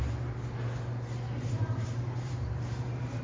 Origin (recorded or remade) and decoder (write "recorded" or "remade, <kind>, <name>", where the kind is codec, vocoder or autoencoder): remade, vocoder, BigVGAN v2